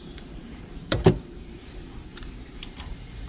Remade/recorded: remade